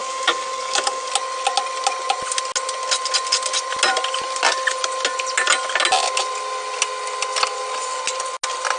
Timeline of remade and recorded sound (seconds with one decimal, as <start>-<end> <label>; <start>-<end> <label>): 0.0-1.1 remade; 1.1-8.8 recorded